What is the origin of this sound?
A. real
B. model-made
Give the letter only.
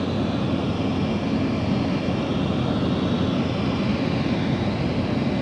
A